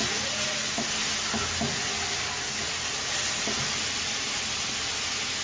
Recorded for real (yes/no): yes